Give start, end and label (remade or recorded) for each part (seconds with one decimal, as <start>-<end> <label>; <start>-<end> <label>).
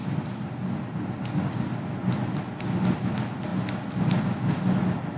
0.0-5.2 recorded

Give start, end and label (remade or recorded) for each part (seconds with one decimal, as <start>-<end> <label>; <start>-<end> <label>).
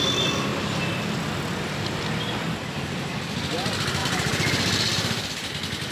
0.0-4.0 recorded; 4.0-5.5 remade; 5.5-5.9 recorded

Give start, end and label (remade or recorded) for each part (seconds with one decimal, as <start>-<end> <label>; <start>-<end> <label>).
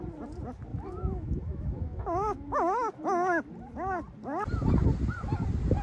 0.0-0.7 recorded; 0.7-3.0 remade; 3.0-5.8 recorded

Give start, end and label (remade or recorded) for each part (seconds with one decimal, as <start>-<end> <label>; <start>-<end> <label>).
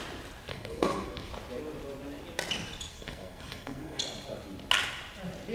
0.0-0.5 recorded; 0.5-1.3 remade; 1.3-2.9 recorded; 2.9-4.0 remade; 4.0-5.5 recorded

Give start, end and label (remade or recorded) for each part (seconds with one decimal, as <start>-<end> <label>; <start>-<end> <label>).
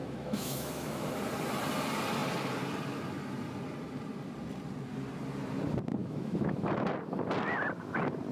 0.0-1.1 remade; 1.1-6.0 recorded; 6.0-6.7 remade; 6.7-8.3 recorded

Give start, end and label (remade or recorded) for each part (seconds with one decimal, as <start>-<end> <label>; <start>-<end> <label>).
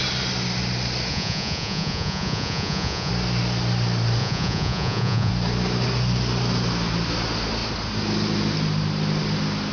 0.0-1.1 recorded; 1.1-3.1 remade; 3.1-4.2 recorded; 4.2-5.3 remade; 5.3-9.7 recorded